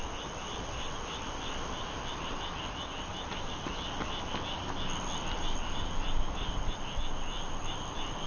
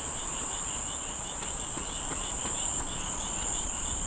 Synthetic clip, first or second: second